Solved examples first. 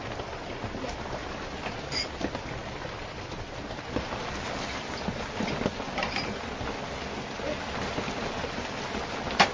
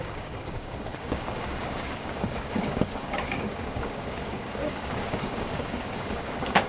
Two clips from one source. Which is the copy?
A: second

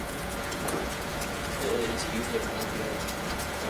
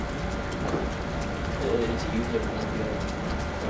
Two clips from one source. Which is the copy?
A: first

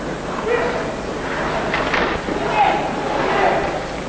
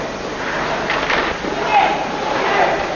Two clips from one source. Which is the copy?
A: second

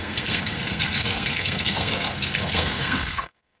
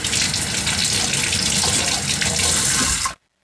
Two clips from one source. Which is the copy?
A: first